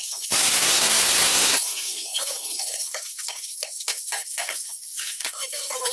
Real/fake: fake